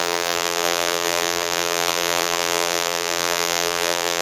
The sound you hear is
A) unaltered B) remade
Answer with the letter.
B